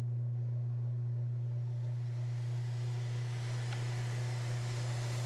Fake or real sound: real